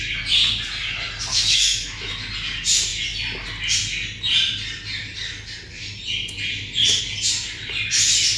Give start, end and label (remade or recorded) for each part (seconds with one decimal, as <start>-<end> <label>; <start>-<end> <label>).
0.0-1.3 recorded; 1.3-2.1 remade; 2.1-8.4 recorded

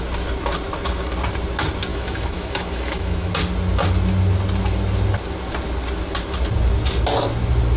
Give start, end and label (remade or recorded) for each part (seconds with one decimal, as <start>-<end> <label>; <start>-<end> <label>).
0.0-1.9 recorded; 1.9-3.3 remade; 3.3-7.8 recorded

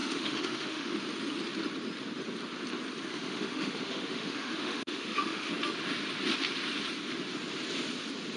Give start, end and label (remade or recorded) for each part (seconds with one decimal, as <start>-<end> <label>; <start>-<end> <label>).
0.0-1.0 remade; 1.0-3.1 recorded; 3.1-5.5 remade; 5.5-8.4 recorded